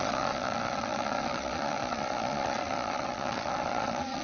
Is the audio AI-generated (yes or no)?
yes